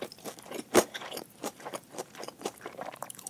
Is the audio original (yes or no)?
no